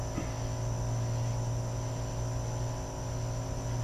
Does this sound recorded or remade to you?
recorded